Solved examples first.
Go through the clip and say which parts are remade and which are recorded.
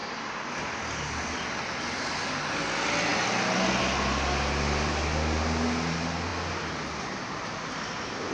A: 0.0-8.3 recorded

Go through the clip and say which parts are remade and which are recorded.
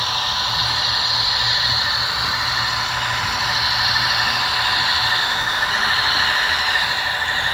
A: 0.0-5.2 recorded; 5.2-5.7 remade; 5.7-7.5 recorded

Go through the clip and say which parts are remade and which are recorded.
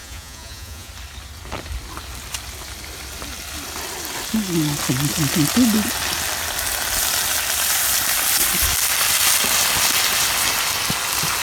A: 0.0-0.9 remade; 0.9-11.4 recorded